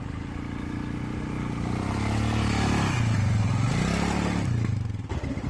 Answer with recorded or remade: recorded